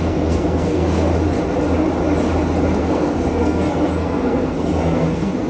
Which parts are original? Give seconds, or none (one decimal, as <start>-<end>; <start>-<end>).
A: 1.1-2.8

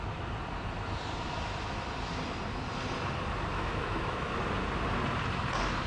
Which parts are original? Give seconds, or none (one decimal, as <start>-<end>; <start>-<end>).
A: 0.0-3.5; 4.3-5.9

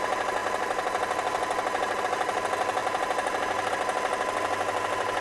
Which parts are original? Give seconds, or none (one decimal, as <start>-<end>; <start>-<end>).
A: 0.0-5.2

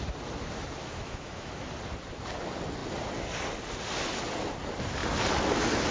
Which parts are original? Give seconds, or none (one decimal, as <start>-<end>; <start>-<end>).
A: 0.0-0.8; 1.5-5.9